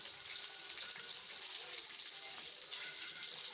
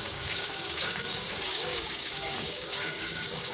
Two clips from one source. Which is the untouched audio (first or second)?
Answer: first